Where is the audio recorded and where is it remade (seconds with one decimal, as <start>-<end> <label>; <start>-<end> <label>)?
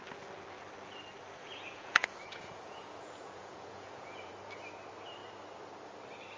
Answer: 0.0-1.3 recorded; 1.3-4.3 remade; 4.3-6.4 recorded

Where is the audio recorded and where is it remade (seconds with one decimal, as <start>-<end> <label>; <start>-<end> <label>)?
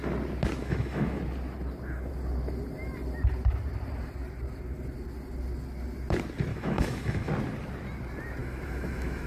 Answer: 0.0-0.6 recorded; 0.6-1.2 remade; 1.2-6.5 recorded; 6.5-7.3 remade; 7.3-8.4 recorded; 8.4-9.3 remade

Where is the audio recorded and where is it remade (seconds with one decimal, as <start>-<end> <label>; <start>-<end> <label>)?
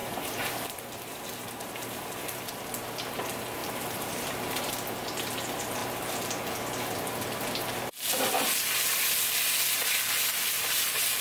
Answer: 0.0-2.5 remade; 2.5-3.6 recorded; 3.6-4.6 remade; 4.6-5.8 recorded; 5.8-6.3 remade; 6.3-11.2 recorded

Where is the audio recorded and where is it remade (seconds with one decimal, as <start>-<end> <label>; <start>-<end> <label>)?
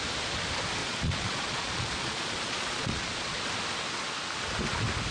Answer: 0.0-0.8 recorded; 0.8-3.4 remade; 3.4-5.1 recorded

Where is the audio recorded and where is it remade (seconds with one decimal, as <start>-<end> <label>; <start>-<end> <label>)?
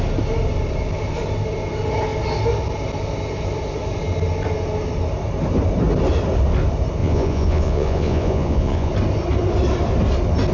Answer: 0.0-7.0 recorded; 7.0-8.9 remade; 8.9-10.5 recorded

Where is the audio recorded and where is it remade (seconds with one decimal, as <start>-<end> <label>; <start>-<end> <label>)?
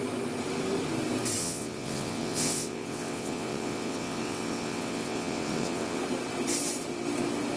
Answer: 0.0-1.4 recorded; 1.4-6.0 remade; 6.0-7.6 recorded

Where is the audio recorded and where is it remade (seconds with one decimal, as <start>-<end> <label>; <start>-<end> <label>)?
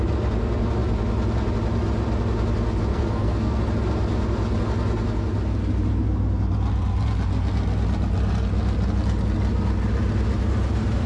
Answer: 0.0-2.9 recorded; 2.9-3.6 remade; 3.6-11.1 recorded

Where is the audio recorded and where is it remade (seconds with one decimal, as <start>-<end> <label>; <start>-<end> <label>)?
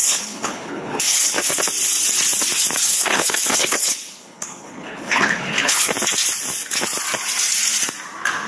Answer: 0.0-1.6 remade; 1.6-2.9 recorded; 2.9-5.9 remade; 5.9-8.5 recorded